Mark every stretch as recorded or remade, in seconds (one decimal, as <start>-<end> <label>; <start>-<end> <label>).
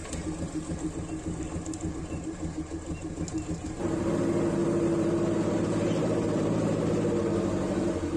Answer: 0.0-2.0 recorded; 2.0-4.1 remade; 4.1-4.6 recorded; 4.6-6.8 remade; 6.8-8.2 recorded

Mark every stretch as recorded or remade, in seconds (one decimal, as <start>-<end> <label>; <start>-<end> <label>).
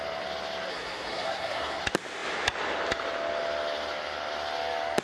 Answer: 0.0-0.7 recorded; 0.7-1.8 remade; 1.8-5.0 recorded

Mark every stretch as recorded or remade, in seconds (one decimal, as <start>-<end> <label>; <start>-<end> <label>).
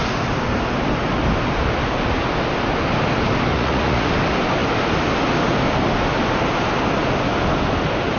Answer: 0.0-3.5 recorded; 3.5-4.1 remade; 4.1-8.2 recorded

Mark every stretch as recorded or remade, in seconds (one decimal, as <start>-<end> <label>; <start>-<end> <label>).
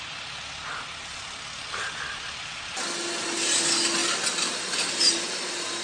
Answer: 0.0-5.8 recorded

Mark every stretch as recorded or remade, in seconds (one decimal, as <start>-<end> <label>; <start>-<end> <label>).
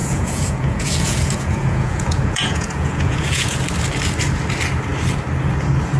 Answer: 0.0-3.6 remade; 3.6-6.0 recorded